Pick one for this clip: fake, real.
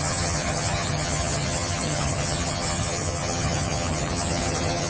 fake